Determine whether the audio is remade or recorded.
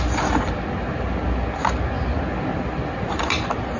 recorded